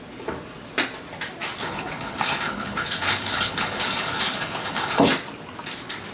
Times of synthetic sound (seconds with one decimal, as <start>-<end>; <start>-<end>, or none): 1.6-5.0